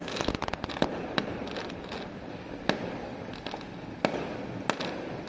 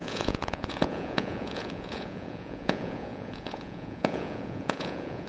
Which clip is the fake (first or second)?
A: second